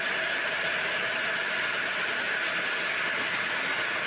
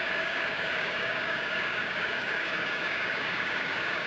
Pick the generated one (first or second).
second